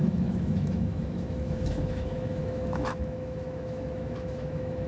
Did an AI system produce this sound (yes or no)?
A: yes